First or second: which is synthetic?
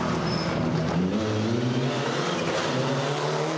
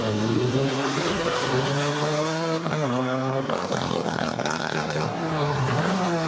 second